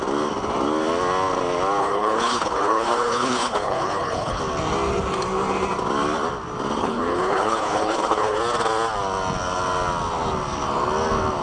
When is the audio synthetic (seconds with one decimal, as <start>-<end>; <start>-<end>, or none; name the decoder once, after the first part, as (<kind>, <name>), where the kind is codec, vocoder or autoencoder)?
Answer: 1.8-4.4 (codec, HILCodec); 6.8-8.4